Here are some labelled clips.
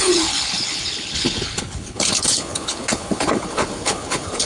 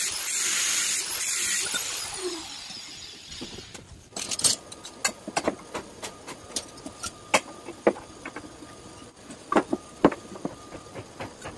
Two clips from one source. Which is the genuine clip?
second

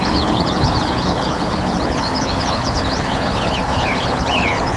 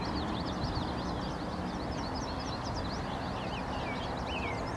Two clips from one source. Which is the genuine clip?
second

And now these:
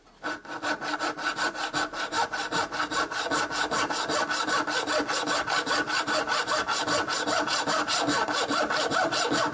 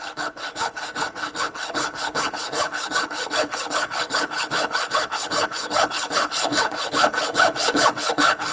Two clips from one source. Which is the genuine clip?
first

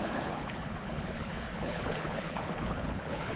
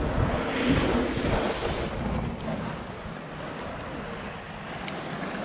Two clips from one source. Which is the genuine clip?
second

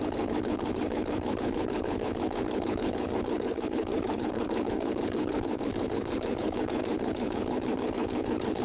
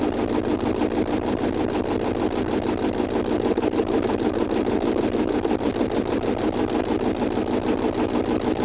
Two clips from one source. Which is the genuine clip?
second